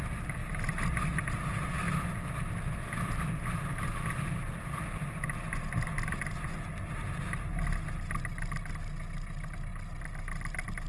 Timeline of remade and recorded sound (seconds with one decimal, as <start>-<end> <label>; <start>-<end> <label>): 0.0-10.9 recorded